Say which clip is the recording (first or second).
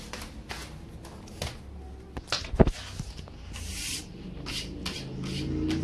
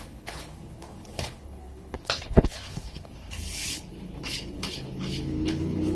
first